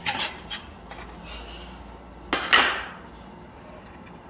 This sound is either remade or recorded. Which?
recorded